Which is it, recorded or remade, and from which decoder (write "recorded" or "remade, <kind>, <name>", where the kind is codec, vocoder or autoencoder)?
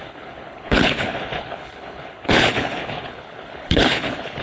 remade, codec, HILCodec